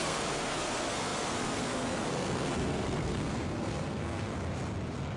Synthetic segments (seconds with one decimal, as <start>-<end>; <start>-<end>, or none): 0.0-4.3